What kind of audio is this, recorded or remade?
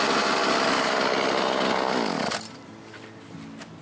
recorded